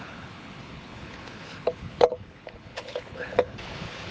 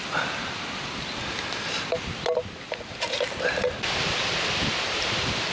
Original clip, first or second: second